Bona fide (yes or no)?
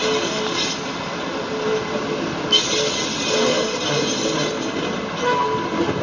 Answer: yes